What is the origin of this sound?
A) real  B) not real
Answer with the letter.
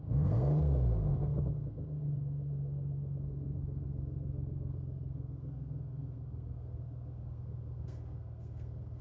B